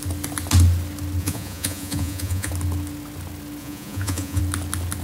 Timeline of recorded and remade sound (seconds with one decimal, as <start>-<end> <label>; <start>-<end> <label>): 0.0-1.2 recorded; 1.2-2.5 remade; 2.5-3.6 recorded; 3.6-4.4 remade; 4.4-5.0 recorded